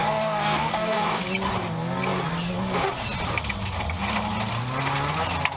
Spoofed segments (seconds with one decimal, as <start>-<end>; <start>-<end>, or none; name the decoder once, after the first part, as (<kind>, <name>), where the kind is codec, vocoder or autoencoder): 0.0-1.2 (codec, DAC)